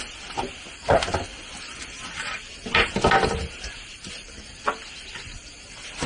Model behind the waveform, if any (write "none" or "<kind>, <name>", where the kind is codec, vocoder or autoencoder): none